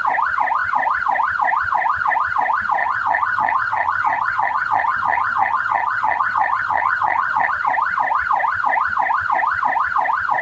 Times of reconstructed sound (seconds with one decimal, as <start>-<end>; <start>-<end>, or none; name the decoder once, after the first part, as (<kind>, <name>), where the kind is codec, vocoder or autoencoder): 2.8-7.5 (vocoder, HiFi-GAN)